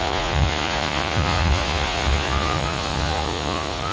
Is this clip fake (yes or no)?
yes